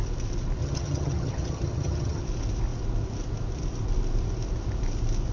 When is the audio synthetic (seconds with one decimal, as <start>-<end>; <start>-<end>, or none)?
0.6-2.2